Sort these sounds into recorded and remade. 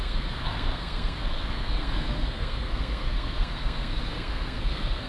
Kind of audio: remade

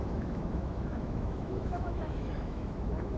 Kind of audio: remade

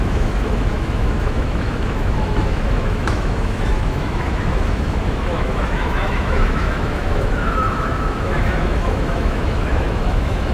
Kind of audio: remade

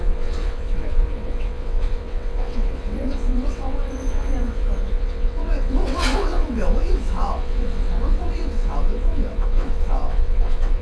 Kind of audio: remade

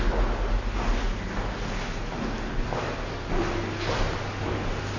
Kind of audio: recorded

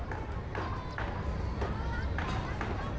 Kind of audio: recorded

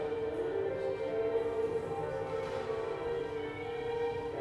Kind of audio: recorded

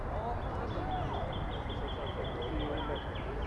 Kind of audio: recorded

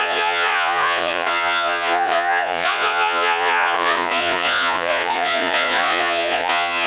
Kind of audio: remade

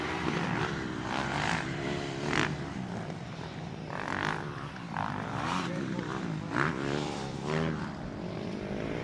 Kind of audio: remade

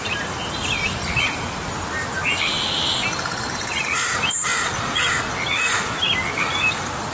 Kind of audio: recorded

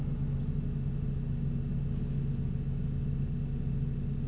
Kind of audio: recorded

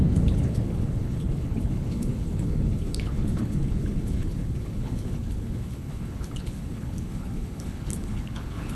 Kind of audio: remade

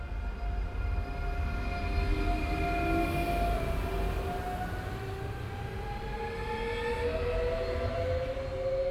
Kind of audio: recorded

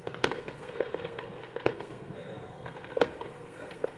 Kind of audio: remade